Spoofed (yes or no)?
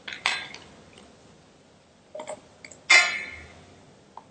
no